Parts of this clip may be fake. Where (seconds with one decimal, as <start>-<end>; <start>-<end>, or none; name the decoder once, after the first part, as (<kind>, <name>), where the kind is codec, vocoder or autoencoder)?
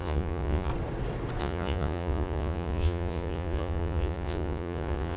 0.0-0.7 (vocoder, Vocos); 1.4-5.2